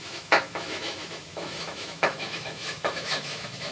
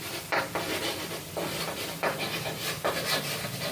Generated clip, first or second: first